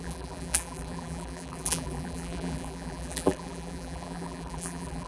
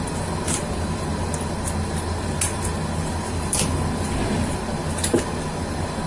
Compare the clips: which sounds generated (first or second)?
first